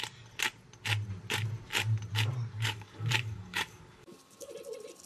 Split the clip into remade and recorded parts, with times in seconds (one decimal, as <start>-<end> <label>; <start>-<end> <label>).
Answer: 0.0-2.5 recorded; 2.5-4.5 remade; 4.5-5.1 recorded